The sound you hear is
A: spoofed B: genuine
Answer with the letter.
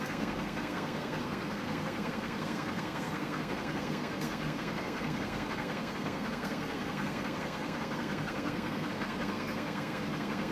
A